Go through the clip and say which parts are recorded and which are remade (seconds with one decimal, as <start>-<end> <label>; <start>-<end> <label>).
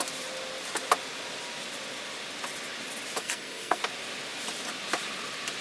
0.0-3.2 recorded; 3.2-3.8 remade; 3.8-5.6 recorded